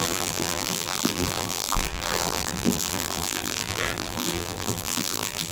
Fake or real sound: fake